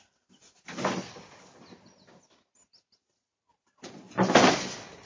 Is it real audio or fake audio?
real